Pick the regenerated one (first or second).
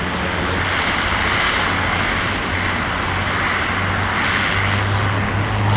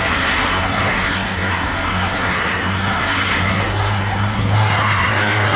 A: second